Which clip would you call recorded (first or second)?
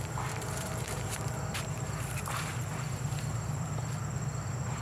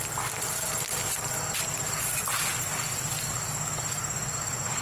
second